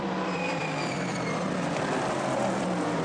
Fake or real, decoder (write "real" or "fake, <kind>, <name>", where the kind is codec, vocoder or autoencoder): fake, vocoder, BigVGAN v2